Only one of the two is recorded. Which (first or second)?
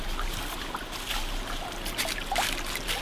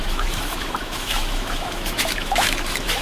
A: first